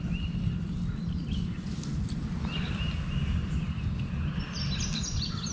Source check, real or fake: real